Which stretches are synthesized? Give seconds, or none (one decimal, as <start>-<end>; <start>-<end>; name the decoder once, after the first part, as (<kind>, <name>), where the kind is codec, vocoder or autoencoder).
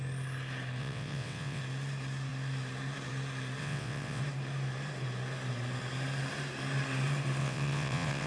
0.8-1.6 (vocoder, WaveNeXt); 3.6-4.2; 7.4-8.3